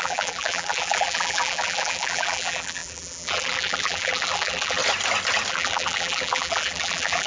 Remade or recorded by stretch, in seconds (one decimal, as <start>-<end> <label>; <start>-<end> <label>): 0.0-4.8 remade; 4.8-5.5 recorded; 5.5-7.3 remade